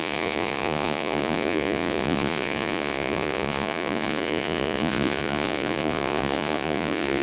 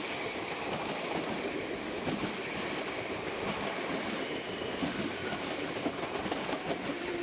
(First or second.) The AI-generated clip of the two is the first